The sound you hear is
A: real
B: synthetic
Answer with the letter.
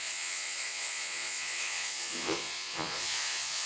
B